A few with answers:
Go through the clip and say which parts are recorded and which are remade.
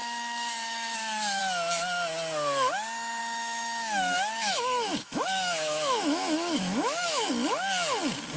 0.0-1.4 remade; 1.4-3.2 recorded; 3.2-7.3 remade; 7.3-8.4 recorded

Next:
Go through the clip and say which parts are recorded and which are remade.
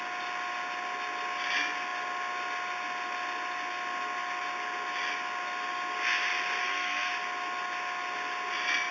0.0-6.6 recorded; 6.6-7.1 remade; 7.1-8.9 recorded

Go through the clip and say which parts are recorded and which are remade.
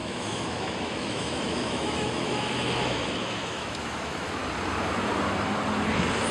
0.0-4.4 remade; 4.4-6.3 recorded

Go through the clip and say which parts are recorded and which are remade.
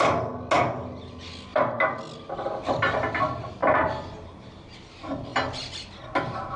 0.0-6.6 recorded